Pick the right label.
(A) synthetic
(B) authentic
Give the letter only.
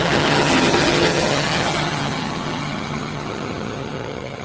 A